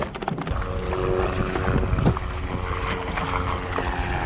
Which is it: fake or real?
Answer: real